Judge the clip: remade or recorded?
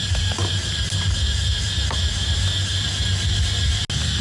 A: recorded